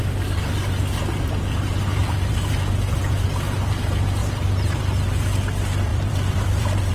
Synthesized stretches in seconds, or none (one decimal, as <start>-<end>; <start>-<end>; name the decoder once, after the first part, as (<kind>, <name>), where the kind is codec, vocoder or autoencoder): 2.0-2.6 (vocoder, BigVGAN v2); 4.2-4.8; 5.9-6.9